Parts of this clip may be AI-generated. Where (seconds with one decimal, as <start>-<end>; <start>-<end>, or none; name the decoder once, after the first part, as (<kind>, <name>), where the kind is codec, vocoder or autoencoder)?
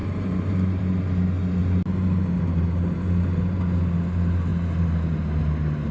0.0-0.8 (vocoder, BigVGAN v2)